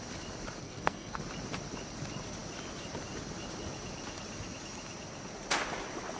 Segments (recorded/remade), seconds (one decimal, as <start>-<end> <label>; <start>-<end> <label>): 0.0-0.6 recorded; 0.6-1.2 remade; 1.2-6.2 recorded